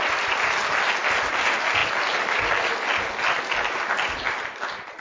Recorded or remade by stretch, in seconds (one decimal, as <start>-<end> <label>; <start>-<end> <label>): 0.0-5.0 recorded